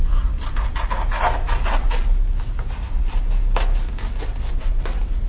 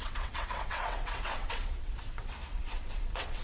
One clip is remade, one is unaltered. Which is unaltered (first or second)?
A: first